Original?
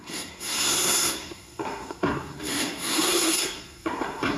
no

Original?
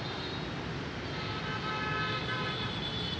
yes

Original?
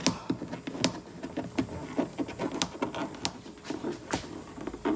yes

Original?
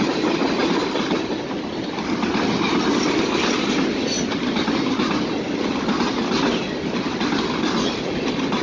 yes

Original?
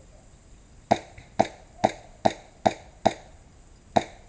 yes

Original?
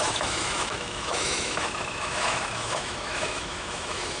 no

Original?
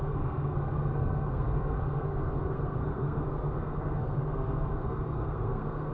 no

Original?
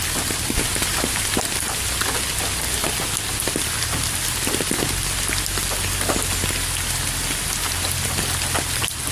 yes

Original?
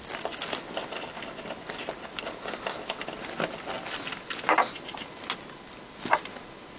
yes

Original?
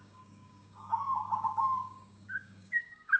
no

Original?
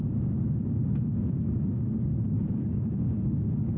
no